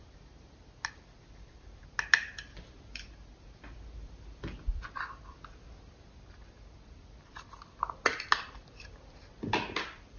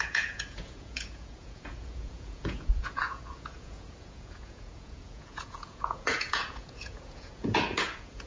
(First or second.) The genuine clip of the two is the first